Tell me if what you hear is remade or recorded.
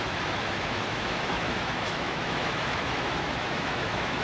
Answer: remade